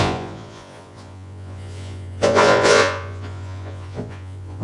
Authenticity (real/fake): fake